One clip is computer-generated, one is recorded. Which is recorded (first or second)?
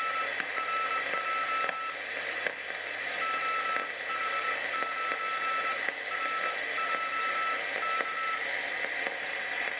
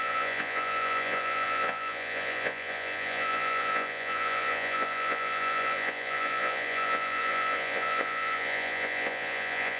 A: first